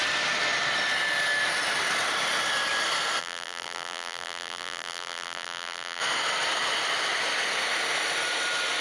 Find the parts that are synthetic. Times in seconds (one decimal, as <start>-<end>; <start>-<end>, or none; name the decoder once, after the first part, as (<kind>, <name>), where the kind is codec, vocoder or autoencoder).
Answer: 3.2-6.0 (vocoder, BigVGAN v2)